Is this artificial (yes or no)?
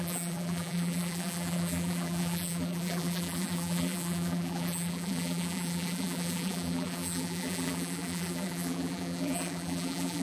yes